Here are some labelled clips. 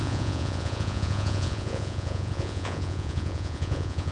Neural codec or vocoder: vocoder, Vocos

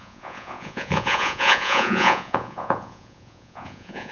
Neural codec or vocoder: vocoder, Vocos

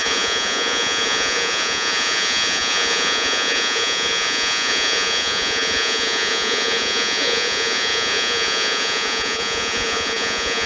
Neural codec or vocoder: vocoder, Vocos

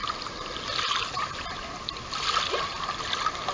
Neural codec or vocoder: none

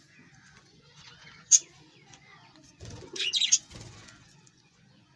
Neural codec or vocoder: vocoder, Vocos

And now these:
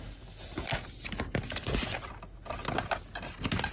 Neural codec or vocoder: none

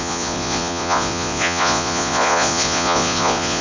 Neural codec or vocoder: vocoder, Vocos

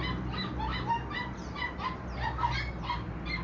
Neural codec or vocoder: none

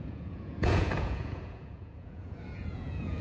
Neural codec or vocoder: vocoder, Vocos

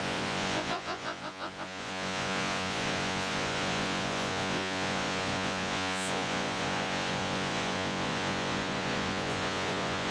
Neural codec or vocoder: vocoder, Vocos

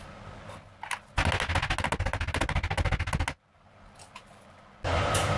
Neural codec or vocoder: none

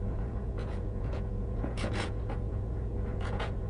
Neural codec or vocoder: vocoder, Vocos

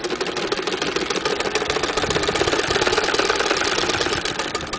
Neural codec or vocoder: none